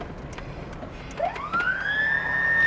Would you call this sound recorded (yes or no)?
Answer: yes